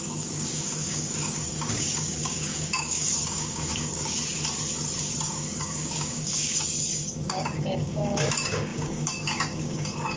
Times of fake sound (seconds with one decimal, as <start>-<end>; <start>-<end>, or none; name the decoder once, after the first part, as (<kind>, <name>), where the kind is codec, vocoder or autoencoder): 0.0-4.2 (codec, DAC); 5.0-10.2